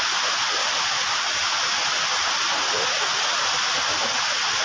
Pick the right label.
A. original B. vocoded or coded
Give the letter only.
A